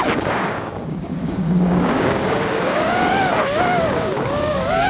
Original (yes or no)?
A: no